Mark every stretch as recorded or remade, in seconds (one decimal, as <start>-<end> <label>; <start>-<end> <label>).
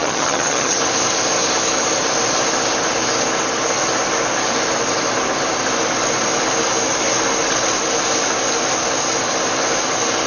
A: 0.0-0.8 remade; 0.8-10.3 recorded